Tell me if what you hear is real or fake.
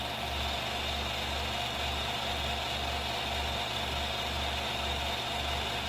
real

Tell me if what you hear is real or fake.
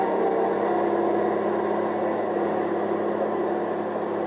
real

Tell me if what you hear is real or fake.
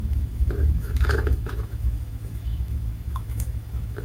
fake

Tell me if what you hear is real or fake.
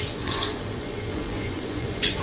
fake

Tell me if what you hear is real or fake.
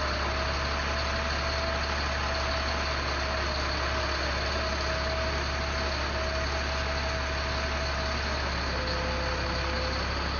real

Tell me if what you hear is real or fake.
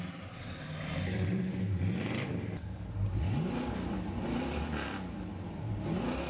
real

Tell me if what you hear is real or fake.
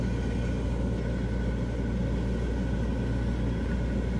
real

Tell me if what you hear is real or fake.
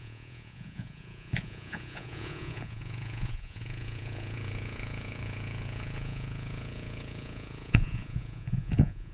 fake